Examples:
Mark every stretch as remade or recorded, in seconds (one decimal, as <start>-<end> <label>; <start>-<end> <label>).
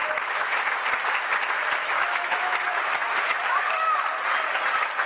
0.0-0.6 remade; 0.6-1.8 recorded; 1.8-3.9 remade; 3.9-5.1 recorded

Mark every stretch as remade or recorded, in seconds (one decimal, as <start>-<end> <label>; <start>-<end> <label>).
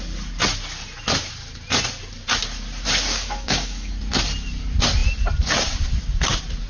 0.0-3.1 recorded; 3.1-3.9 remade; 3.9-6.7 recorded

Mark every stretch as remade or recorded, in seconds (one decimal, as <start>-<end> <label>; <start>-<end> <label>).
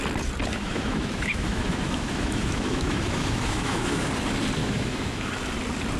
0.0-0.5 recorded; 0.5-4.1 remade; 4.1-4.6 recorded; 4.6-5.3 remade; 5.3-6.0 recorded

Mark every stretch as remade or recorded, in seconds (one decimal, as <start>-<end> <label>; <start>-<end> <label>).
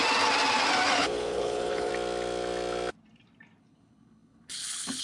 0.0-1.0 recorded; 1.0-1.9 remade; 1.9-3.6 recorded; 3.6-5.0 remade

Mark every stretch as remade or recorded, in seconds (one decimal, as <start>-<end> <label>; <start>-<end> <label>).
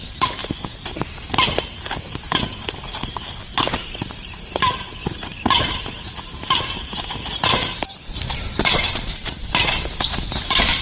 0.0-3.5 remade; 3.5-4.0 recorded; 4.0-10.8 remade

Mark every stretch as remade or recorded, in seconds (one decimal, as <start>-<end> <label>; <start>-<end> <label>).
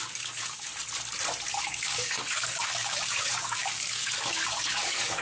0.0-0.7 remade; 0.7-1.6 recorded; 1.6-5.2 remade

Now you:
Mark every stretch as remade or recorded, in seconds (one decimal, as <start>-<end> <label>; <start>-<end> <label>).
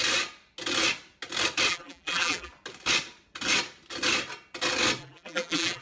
0.0-1.7 recorded; 1.7-2.5 remade; 2.5-5.0 recorded; 5.0-5.8 remade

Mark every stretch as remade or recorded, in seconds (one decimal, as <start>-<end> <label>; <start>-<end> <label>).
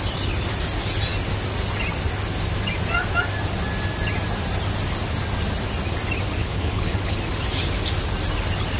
0.0-6.4 recorded; 6.4-7.2 remade; 7.2-8.8 recorded